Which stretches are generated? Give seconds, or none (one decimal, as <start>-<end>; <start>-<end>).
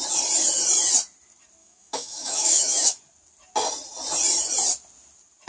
1.6-3.0